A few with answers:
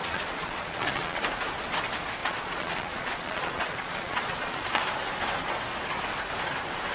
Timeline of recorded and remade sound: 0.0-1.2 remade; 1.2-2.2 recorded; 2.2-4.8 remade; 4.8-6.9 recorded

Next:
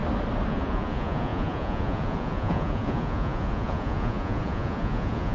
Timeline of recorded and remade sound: 0.0-0.5 recorded; 0.5-5.3 remade

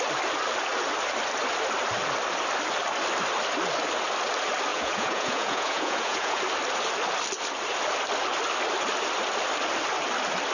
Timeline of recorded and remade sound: 0.0-4.7 recorded; 4.7-6.4 remade; 6.4-10.5 recorded

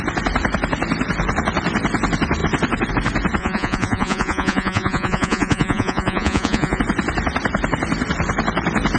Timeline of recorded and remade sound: 0.0-3.4 recorded; 3.4-6.8 remade; 6.8-9.0 recorded